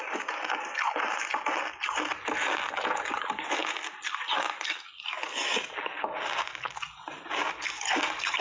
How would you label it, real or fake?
real